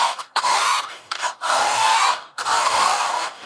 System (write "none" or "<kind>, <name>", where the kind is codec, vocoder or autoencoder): codec, DAC